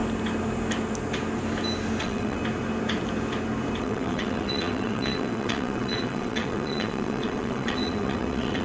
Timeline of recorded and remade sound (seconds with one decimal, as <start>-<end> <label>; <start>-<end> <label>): 0.0-2.0 recorded; 2.0-2.4 remade; 2.4-3.8 recorded; 3.8-8.6 remade